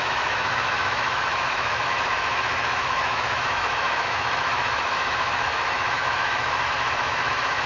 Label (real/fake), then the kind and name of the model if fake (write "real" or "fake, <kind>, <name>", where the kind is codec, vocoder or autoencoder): fake, autoencoder, DAC-VAE